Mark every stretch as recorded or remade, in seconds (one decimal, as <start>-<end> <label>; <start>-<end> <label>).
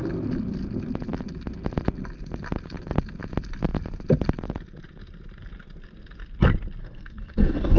0.0-6.8 recorded; 6.8-7.8 remade